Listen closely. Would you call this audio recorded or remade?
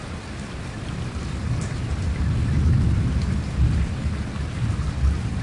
recorded